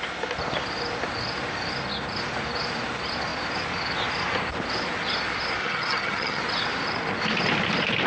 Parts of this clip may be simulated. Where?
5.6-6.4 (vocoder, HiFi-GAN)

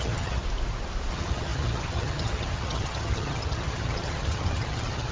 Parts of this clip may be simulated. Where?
0.0-0.4 (vocoder, HiFi-GAN); 1.1-5.1

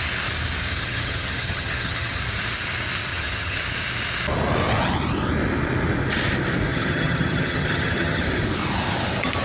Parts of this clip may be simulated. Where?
0.7-2.2 (vocoder, HiFi-GAN); 3.1-3.6; 6.7-8.2

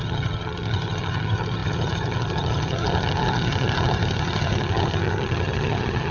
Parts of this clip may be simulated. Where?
0.0-6.1 (vocoder, HiFi-GAN)

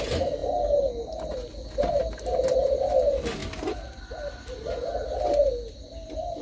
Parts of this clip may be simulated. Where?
none

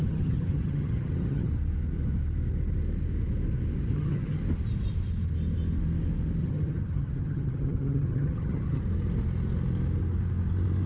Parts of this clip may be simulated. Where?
0.0-1.5 (vocoder, HiFi-GAN); 3.9-4.4; 6.4-8.8

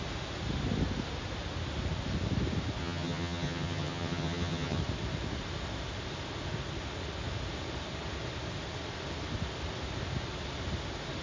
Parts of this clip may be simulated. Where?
2.8-4.8 (vocoder, HiFi-GAN)